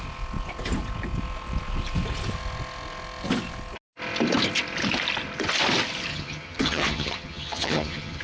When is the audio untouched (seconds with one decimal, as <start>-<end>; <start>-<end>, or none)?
0.0-6.1